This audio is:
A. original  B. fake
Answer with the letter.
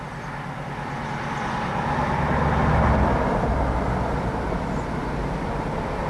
A